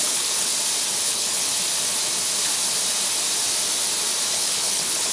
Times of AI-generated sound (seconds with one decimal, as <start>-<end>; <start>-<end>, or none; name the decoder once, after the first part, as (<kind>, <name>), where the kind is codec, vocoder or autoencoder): 0.0-0.5 (codec, HILCodec); 1.0-1.5; 4.3-5.1